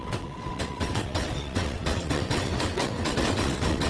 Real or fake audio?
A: fake